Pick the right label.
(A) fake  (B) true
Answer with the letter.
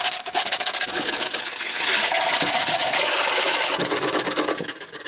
A